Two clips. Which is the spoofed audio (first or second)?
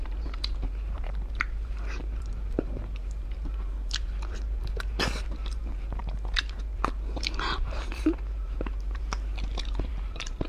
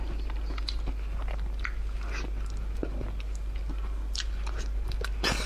first